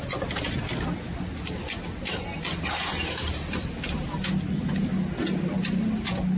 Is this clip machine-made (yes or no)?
no